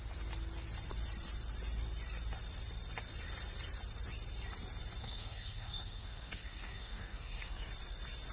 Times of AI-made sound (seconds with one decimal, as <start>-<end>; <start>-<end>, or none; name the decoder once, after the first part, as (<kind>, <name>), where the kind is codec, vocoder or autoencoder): 5.0-7.7 (codec, SNAC)